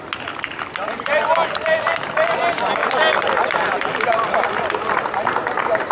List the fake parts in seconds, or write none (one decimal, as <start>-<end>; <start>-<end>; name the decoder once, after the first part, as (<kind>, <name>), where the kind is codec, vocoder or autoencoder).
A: none